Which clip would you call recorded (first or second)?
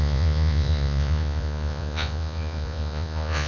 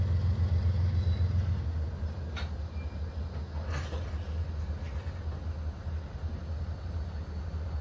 second